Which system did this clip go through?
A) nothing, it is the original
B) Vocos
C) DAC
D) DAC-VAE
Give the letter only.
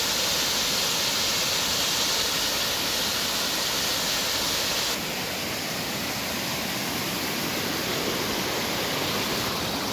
A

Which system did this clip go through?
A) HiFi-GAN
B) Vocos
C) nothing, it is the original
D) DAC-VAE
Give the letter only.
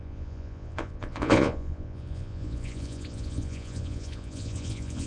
B